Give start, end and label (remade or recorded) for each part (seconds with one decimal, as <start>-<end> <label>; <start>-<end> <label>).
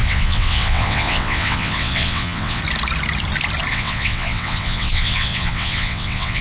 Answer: 0.0-2.6 remade; 2.6-3.7 recorded; 3.7-6.4 remade